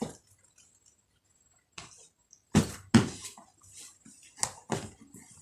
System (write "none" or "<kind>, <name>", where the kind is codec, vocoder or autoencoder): none